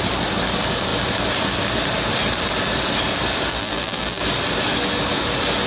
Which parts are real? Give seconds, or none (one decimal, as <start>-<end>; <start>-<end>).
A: 0.0-3.5; 4.2-5.7